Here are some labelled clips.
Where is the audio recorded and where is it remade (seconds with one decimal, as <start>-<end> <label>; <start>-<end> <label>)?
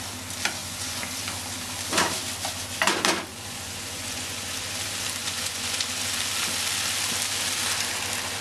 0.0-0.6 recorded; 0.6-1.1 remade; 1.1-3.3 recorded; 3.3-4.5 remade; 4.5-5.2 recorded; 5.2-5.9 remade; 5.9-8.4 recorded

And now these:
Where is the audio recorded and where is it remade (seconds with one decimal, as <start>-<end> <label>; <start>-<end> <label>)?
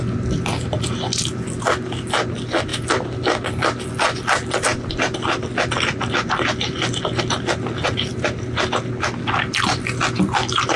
0.0-10.8 recorded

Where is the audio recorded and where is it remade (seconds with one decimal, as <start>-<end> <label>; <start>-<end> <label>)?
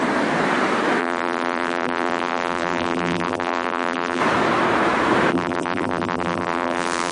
0.0-1.0 recorded; 1.0-4.2 remade; 4.2-5.3 recorded; 5.3-7.1 remade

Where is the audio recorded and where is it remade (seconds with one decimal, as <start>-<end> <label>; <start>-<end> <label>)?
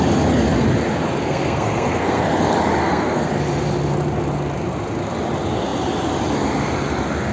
0.0-1.2 recorded; 1.2-2.3 remade; 2.3-2.8 recorded; 2.8-3.3 remade; 3.3-7.3 recorded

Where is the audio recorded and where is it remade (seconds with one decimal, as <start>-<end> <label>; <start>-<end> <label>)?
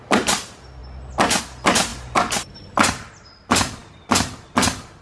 0.0-5.0 recorded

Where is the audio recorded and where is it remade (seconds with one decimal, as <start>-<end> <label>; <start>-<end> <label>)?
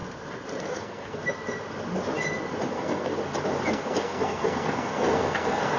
0.0-0.6 recorded; 0.6-1.2 remade; 1.2-2.7 recorded; 2.7-3.1 remade; 3.1-3.7 recorded; 3.7-5.8 remade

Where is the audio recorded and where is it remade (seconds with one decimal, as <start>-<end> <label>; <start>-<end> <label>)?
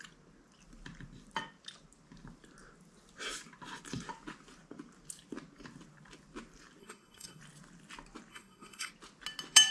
0.0-6.8 recorded; 6.8-7.4 remade; 7.4-8.3 recorded; 8.3-8.9 remade; 8.9-9.7 recorded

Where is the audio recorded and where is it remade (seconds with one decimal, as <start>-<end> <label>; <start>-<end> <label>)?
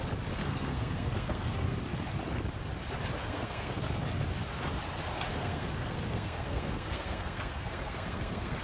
0.0-0.4 recorded; 0.4-1.8 remade; 1.8-3.2 recorded; 3.2-4.0 remade; 4.0-5.3 recorded; 5.3-8.6 remade